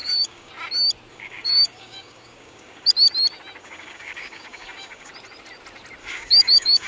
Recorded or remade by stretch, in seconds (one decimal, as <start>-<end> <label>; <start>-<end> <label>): 0.0-0.5 remade; 0.5-1.1 recorded; 1.1-2.9 remade; 2.9-3.6 recorded; 3.6-5.1 remade; 5.1-6.0 recorded; 6.0-6.9 remade